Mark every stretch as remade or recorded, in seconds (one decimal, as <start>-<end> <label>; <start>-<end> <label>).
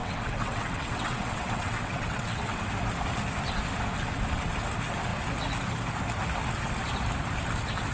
0.0-2.6 remade; 2.6-7.9 recorded